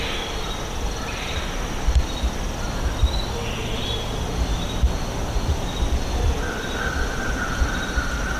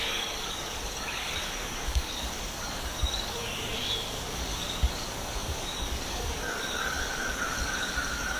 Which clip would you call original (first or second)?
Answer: first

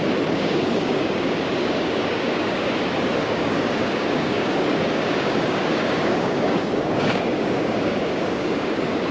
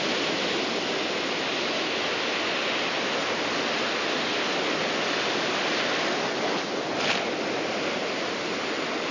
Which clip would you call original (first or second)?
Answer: second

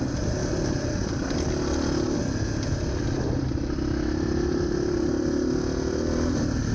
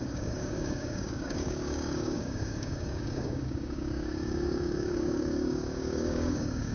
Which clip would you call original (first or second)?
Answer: first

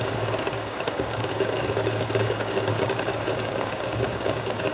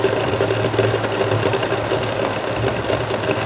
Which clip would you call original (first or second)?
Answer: second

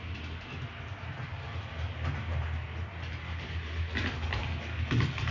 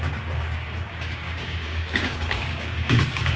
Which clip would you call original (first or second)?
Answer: first